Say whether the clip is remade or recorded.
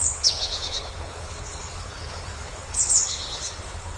remade